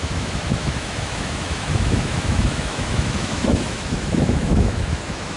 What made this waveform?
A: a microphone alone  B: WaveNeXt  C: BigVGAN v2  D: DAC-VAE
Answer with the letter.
D